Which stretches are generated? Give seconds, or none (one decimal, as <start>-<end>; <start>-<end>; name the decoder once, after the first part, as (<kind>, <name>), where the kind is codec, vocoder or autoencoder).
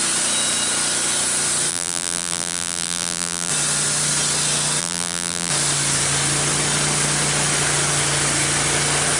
1.7-3.5 (vocoder, BigVGAN v2); 4.8-5.5